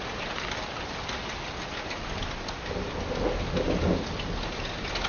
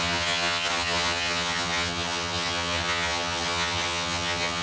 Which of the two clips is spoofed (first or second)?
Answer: second